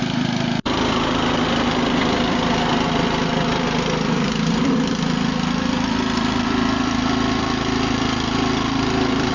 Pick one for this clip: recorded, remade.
remade